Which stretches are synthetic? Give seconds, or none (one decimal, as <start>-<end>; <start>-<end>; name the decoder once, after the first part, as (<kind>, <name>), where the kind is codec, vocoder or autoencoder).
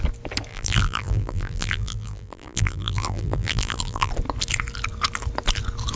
0.5-4.1 (vocoder, BigVGAN v2)